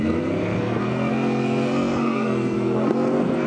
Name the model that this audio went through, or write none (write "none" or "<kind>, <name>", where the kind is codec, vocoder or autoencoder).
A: codec, SNAC